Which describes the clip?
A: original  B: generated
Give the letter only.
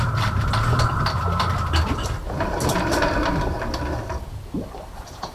B